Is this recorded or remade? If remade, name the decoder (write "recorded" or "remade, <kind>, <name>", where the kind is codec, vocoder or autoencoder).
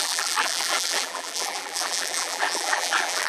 remade, vocoder, BigVGAN v2